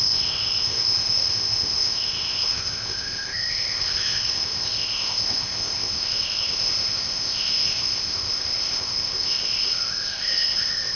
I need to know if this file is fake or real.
fake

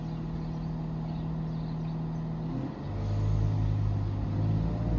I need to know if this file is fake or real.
real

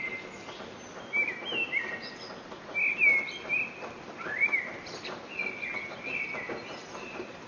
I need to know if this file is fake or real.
real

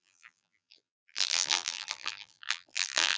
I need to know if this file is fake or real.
fake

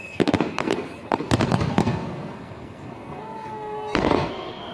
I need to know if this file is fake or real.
fake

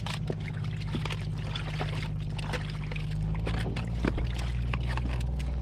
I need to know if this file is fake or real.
real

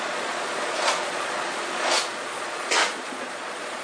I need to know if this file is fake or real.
fake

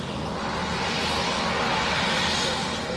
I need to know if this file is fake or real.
real